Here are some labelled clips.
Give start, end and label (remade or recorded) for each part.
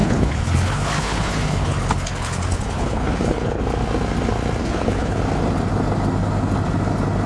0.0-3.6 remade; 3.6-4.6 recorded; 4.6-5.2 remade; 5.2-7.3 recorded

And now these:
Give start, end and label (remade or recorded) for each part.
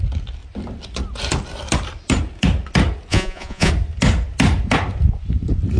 0.0-3.1 recorded; 3.1-3.7 remade; 3.7-5.8 recorded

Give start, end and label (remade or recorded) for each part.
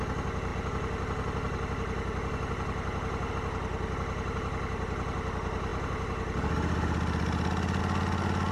0.0-8.5 recorded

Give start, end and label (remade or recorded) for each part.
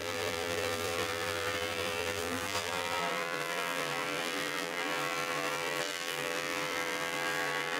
0.0-7.8 remade